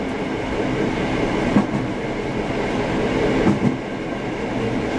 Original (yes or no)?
yes